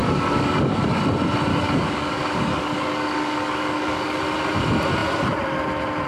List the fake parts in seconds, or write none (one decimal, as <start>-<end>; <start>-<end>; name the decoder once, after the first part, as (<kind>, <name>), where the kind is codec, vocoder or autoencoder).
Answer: 0.0-1.0 (codec, DAC); 1.5-4.2